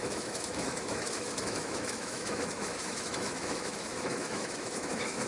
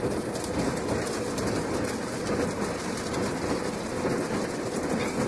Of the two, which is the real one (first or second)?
second